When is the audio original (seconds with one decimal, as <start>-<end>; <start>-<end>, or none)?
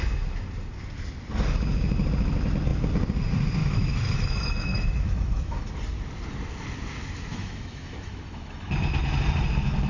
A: 0.0-3.6; 5.7-7.3; 8.7-9.9